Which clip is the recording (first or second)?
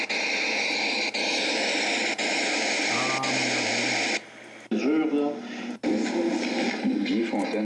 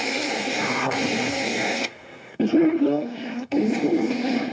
first